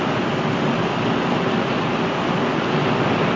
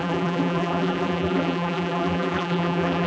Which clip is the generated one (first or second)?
second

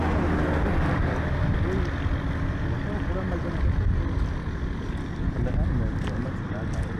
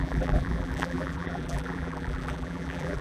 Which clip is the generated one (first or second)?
second